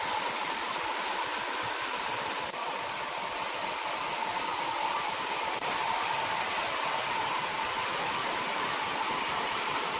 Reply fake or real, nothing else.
real